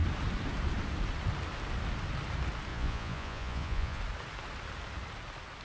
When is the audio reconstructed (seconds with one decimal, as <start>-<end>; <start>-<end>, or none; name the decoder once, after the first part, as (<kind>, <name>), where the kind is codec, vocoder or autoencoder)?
2.7-4.0 (vocoder, Vocos)